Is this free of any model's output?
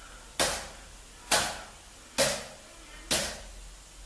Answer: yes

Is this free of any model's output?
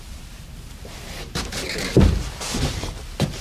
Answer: no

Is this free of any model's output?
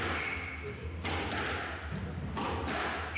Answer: yes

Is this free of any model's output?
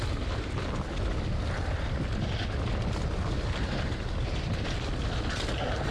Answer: yes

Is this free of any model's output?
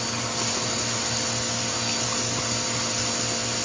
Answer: yes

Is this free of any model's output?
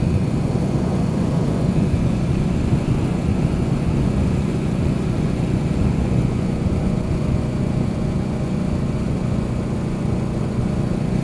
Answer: no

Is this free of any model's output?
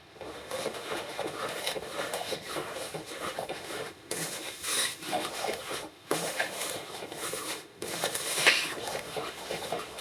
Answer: no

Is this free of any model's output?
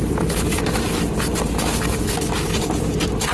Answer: yes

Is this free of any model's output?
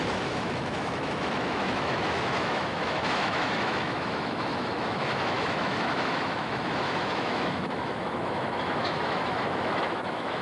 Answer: no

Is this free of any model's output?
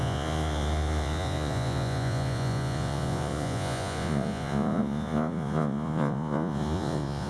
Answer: no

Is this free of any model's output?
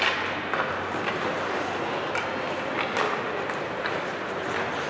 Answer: yes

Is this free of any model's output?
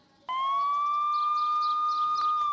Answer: yes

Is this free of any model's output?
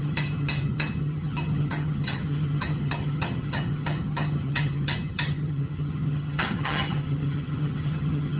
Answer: no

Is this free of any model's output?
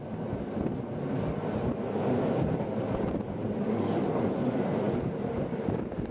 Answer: yes